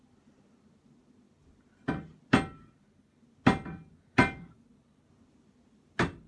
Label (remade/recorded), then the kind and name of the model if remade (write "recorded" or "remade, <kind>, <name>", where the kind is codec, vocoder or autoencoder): recorded